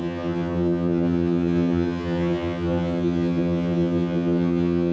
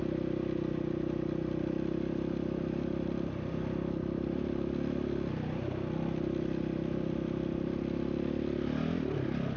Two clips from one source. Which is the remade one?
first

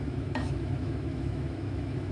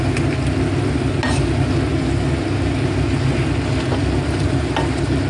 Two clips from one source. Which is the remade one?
first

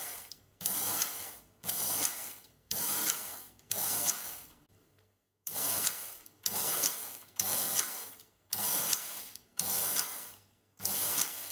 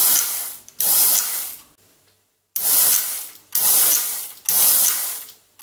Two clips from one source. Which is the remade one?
first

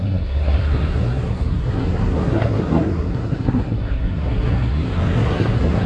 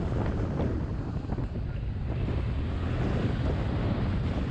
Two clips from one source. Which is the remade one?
first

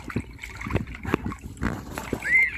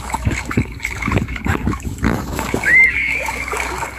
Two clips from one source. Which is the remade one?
second